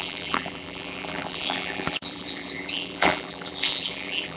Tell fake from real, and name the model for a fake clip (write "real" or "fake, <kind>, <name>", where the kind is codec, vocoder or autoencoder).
fake, vocoder, BigVGAN v2